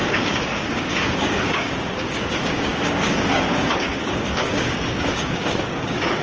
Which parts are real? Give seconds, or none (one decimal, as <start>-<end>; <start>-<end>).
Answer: none